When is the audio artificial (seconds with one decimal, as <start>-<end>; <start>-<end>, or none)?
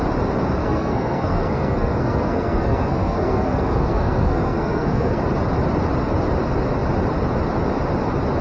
0.6-5.2